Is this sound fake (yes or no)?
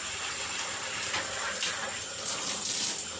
no